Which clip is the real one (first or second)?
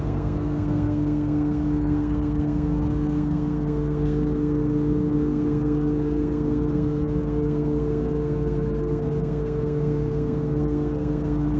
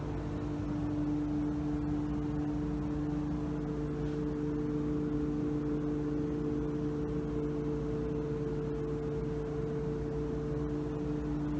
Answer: second